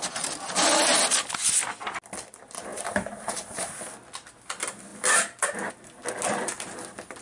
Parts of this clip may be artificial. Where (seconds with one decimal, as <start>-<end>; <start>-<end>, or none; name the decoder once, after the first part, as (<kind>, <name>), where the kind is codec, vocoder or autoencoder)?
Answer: 2.7-3.7 (vocoder, BigVGAN v2)